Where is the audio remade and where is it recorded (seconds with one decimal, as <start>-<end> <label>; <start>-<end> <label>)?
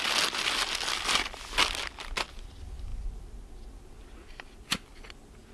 0.0-5.5 recorded